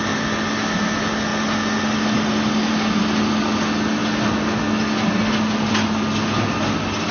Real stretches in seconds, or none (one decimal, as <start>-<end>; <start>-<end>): 0.0-7.1